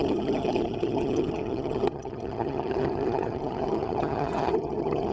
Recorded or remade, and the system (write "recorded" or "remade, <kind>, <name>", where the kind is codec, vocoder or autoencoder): remade, vocoder, HiFi-GAN